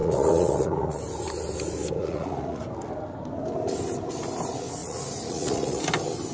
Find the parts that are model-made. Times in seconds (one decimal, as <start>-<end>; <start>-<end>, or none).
0.0-1.0; 2.0-2.6; 4.8-5.8